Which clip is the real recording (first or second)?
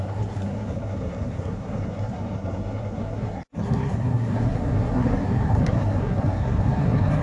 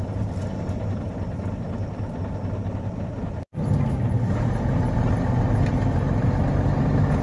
second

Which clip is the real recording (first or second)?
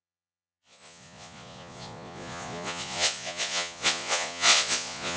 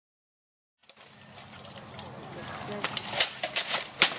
second